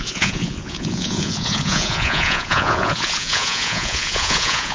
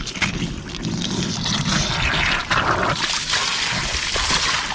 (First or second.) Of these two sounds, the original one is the second